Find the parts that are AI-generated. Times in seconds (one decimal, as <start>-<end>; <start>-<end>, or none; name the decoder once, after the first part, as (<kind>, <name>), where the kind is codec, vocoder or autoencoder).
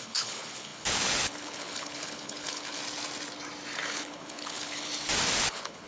0.0-2.8 (codec, HILCodec); 3.9-4.9; 5.4-5.9